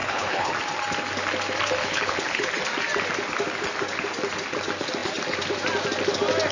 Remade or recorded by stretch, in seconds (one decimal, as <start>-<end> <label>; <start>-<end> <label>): 0.0-0.5 remade; 0.5-1.8 recorded; 1.8-2.5 remade; 2.5-6.5 recorded